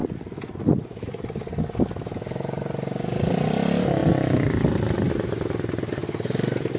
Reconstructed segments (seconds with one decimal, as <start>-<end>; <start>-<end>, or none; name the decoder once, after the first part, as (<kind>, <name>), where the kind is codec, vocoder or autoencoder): 0.0-1.2 (vocoder, Vocos)